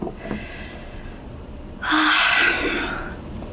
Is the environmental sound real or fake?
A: real